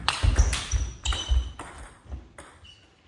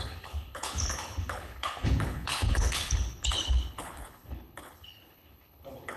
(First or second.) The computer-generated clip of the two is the second